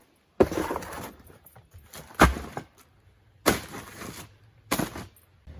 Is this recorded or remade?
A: recorded